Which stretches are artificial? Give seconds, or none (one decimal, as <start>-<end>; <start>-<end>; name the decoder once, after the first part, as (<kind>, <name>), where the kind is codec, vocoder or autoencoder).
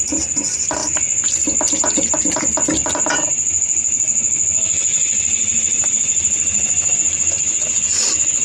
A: 4.9-7.3 (vocoder, BigVGAN v2)